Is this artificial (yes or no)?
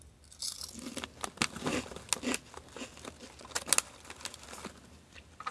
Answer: no